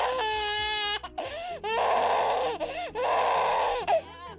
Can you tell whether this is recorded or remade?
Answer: recorded